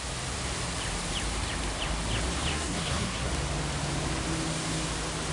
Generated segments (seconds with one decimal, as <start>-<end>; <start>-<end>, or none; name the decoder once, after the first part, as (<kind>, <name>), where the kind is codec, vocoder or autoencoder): 2.5-3.3 (codec, SNAC)